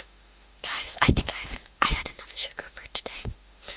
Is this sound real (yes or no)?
no